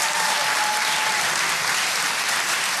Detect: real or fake real